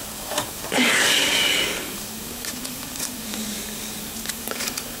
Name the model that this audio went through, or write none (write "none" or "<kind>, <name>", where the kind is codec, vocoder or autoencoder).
codec, DAC